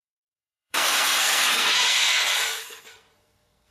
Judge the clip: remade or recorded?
remade